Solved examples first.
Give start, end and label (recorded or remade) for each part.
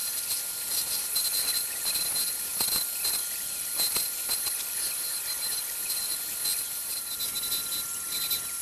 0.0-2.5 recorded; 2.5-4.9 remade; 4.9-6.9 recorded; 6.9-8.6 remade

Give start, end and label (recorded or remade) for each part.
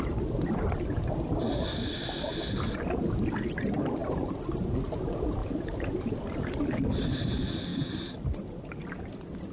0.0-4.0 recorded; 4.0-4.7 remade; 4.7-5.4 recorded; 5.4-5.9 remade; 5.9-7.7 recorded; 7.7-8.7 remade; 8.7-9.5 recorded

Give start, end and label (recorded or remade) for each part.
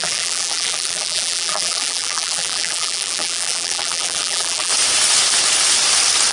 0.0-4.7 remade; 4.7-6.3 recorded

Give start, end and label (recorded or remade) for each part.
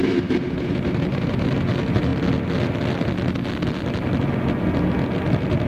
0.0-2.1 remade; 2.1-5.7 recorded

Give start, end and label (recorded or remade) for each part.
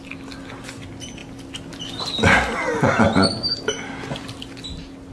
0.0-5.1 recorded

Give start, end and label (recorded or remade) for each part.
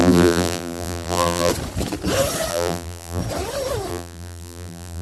0.0-1.5 remade; 1.5-2.5 recorded; 2.5-3.2 remade; 3.2-3.9 recorded; 3.9-5.0 remade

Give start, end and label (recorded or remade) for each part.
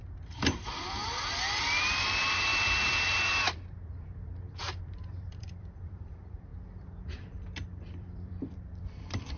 0.0-1.0 remade; 1.0-1.6 recorded; 1.6-6.5 remade; 6.5-7.2 recorded; 7.2-9.4 remade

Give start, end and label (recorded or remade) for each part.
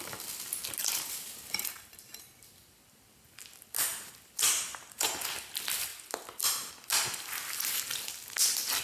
0.0-0.8 recorded; 0.8-2.1 remade; 2.1-8.8 recorded